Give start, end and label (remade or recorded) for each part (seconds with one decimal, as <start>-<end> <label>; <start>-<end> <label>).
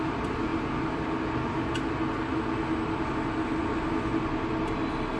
0.0-5.2 recorded